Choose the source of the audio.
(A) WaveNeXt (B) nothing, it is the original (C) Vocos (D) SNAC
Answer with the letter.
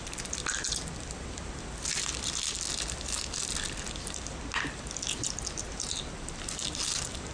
B